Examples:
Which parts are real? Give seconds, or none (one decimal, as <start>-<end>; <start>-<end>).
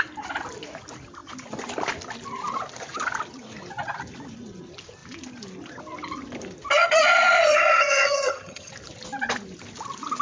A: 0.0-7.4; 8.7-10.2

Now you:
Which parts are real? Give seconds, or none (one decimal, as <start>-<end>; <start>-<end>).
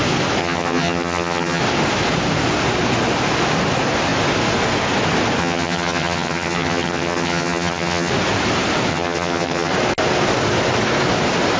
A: 0.0-0.4; 1.6-5.4; 8.1-8.9; 9.7-11.6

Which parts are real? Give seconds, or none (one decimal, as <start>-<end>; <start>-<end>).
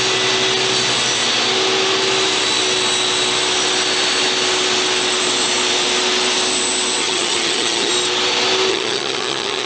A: 0.0-7.0; 7.9-8.7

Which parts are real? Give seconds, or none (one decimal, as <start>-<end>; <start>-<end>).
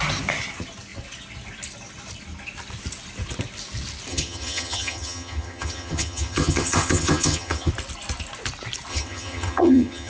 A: 0.0-4.1; 7.7-8.9